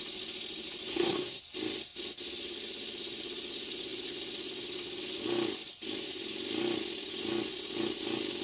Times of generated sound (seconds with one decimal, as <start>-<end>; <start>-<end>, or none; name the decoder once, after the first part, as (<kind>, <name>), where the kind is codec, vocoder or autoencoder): 0.9-1.4 (codec, SNAC)